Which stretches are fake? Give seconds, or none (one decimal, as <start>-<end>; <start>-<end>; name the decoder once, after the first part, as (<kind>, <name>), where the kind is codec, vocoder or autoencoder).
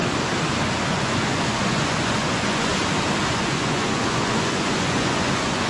0.9-2.7 (vocoder, Vocos); 3.3-5.7